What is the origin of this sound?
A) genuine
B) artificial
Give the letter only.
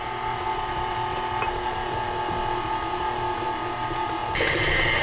A